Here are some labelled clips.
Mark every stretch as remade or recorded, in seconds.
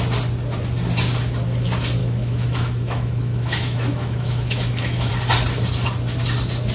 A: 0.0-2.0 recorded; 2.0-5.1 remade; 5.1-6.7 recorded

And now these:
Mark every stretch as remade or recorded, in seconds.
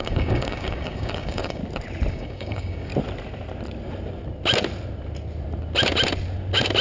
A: 0.0-1.6 remade; 1.6-2.1 recorded; 2.1-2.9 remade; 2.9-6.8 recorded